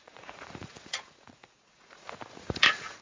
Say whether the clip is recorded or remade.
remade